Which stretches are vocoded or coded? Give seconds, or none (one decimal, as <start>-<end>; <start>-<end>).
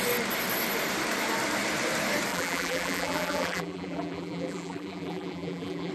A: 2.3-5.9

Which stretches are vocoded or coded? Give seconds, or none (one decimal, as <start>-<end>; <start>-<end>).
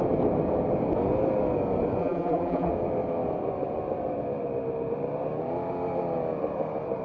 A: 2.0-2.7